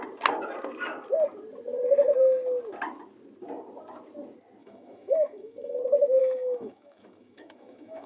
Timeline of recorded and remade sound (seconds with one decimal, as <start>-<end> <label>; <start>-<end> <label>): 0.0-4.6 recorded; 4.6-5.8 remade; 5.8-6.2 recorded; 6.2-8.1 remade